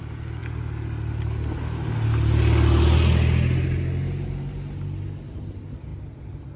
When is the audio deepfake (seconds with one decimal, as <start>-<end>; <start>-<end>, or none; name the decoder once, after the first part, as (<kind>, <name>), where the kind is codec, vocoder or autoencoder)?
none